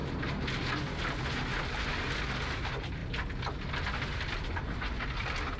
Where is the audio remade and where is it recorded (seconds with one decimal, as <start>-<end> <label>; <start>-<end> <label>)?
0.0-5.6 recorded